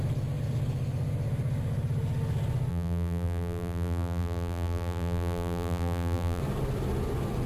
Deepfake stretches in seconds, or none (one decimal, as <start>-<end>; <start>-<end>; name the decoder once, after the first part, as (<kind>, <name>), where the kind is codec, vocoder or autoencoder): 2.7-6.4 (vocoder, BigVGAN v2)